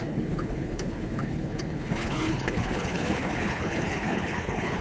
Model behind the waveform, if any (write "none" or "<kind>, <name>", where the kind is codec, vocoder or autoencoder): codec, HILCodec